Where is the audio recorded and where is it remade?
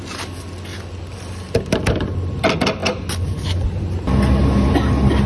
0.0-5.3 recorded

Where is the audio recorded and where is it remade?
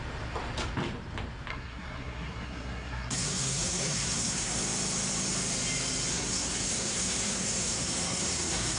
0.0-1.5 recorded; 1.5-4.6 remade; 4.6-6.1 recorded; 6.1-8.8 remade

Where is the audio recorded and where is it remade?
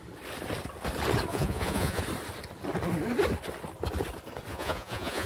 0.0-1.3 recorded; 1.3-2.0 remade; 2.0-4.5 recorded; 4.5-5.3 remade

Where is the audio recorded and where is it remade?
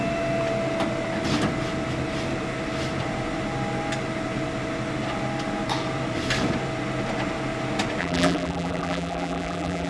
0.0-8.0 recorded; 8.0-9.9 remade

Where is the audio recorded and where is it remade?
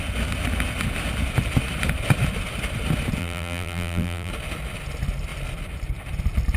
0.0-3.2 recorded; 3.2-4.3 remade; 4.3-6.6 recorded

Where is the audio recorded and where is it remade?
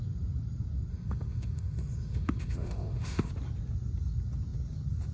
0.0-0.9 recorded; 0.9-3.3 remade; 3.3-5.1 recorded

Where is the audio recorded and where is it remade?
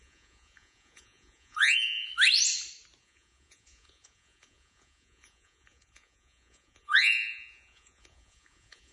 0.0-2.1 remade; 2.1-3.0 recorded; 3.0-8.9 remade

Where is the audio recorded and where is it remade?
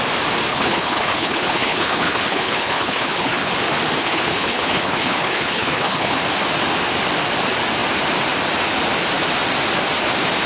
0.0-0.5 recorded; 0.5-3.5 remade; 3.5-4.0 recorded; 4.0-6.2 remade; 6.2-10.5 recorded